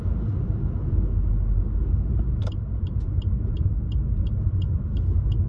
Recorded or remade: recorded